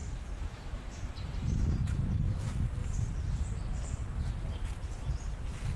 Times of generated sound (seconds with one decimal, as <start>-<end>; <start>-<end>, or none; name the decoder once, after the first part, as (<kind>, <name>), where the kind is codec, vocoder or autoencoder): 0.0-1.1 (autoencoder, DAC-VAE)